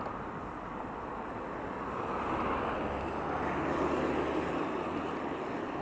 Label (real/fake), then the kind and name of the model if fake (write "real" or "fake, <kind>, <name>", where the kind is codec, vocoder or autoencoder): real